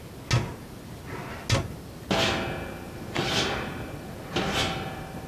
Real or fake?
real